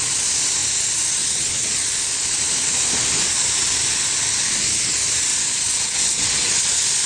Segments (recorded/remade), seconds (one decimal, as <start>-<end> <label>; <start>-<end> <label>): 0.0-5.3 recorded; 5.3-6.5 remade; 6.5-7.1 recorded